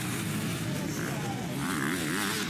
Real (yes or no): yes